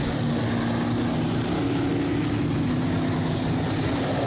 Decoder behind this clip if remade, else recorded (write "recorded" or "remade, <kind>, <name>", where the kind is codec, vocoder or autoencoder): recorded